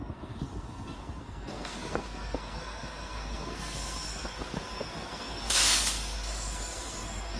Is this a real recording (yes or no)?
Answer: no